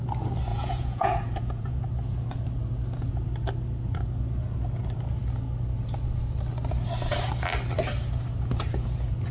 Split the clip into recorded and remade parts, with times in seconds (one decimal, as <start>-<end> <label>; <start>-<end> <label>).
0.0-0.5 recorded; 0.5-1.8 remade; 1.8-9.3 recorded